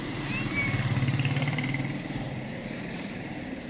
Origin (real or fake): fake